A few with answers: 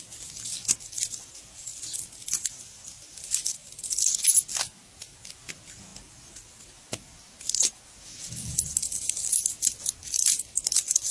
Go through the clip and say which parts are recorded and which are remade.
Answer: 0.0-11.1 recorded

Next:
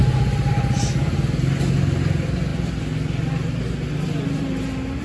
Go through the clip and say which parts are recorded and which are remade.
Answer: 0.0-5.0 recorded

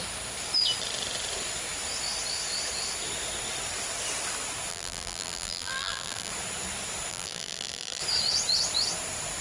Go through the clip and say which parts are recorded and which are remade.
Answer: 0.0-4.7 recorded; 4.7-6.3 remade; 6.3-7.1 recorded; 7.1-8.0 remade; 8.0-9.4 recorded